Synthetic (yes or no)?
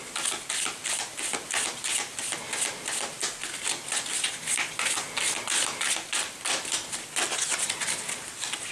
no